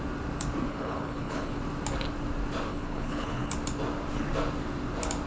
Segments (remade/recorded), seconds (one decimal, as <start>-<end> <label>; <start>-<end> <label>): 0.0-0.7 recorded; 0.7-1.6 remade; 1.6-2.7 recorded; 2.7-3.5 remade; 3.5-5.3 recorded